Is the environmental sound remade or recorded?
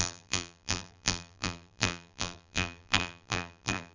remade